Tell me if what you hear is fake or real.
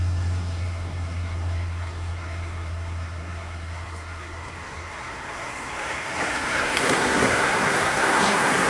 fake